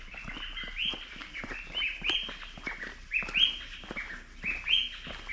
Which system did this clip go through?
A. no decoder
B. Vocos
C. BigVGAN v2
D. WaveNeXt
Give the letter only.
A